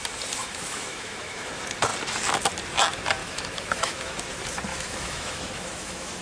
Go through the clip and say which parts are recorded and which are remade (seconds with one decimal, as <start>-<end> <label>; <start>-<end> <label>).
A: 0.0-0.4 recorded; 0.4-1.5 remade; 1.5-3.2 recorded; 3.2-4.2 remade; 4.2-4.7 recorded; 4.7-6.2 remade